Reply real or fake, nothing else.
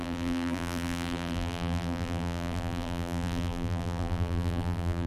fake